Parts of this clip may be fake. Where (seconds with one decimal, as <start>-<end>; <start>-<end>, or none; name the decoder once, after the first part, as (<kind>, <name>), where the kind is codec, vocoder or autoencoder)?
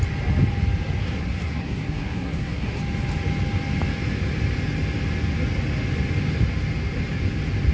1.0-2.8 (codec, SNAC)